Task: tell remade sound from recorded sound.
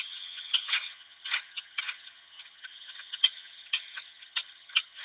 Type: remade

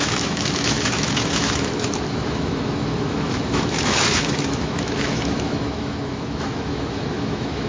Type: remade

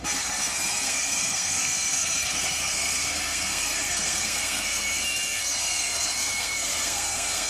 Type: remade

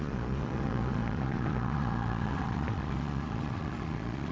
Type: remade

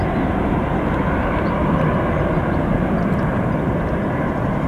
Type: recorded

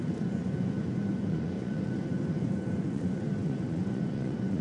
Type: remade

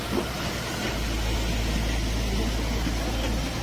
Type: recorded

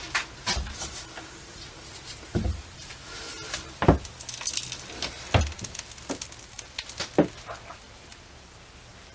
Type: recorded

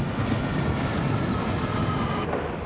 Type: recorded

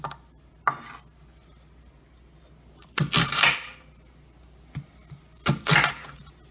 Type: recorded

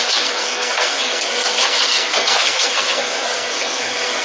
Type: remade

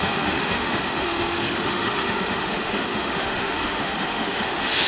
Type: remade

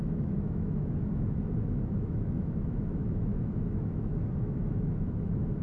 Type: remade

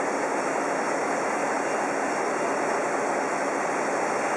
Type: recorded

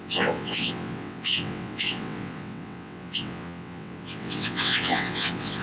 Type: remade